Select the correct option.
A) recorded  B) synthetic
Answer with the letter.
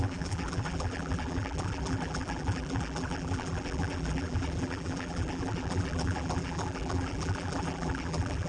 B